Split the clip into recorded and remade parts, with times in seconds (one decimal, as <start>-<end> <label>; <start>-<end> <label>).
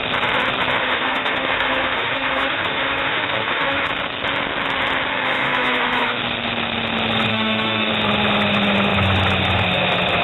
0.0-0.8 recorded; 0.8-3.9 remade; 3.9-5.1 recorded; 5.1-6.2 remade; 6.2-7.3 recorded; 7.3-7.9 remade; 7.9-10.2 recorded